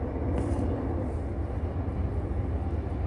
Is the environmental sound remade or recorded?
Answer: remade